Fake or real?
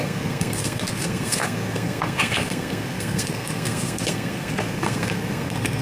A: fake